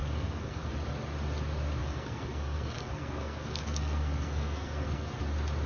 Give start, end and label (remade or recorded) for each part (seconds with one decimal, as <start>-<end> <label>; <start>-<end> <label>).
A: 0.0-0.7 remade; 0.7-1.8 recorded; 1.8-5.2 remade; 5.2-5.7 recorded